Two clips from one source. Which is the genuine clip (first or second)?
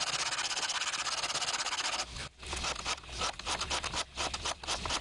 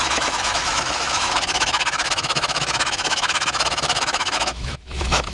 first